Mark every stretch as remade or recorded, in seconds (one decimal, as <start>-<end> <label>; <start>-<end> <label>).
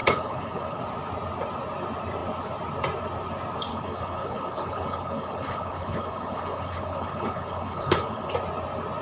0.0-0.8 remade; 0.8-3.7 recorded; 3.7-8.3 remade; 8.3-9.0 recorded